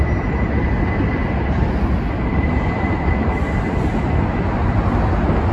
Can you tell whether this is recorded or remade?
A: recorded